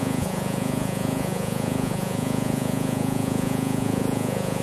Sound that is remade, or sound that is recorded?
remade